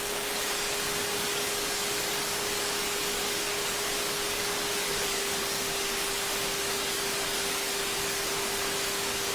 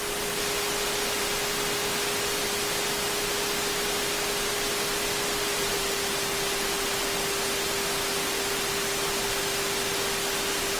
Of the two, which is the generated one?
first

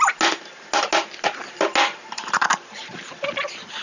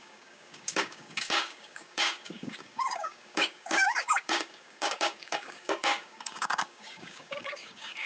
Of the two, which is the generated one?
second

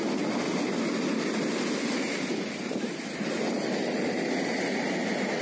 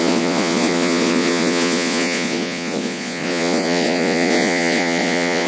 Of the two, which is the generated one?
second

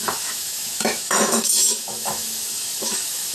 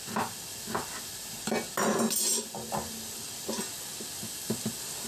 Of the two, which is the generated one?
first